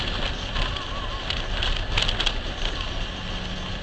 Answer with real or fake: real